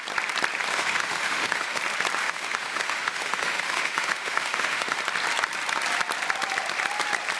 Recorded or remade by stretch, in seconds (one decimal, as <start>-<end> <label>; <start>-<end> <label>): 0.0-0.7 recorded; 0.7-1.8 remade; 1.8-2.2 recorded; 2.2-5.0 remade; 5.0-7.4 recorded